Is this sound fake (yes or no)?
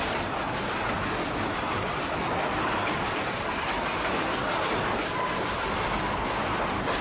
no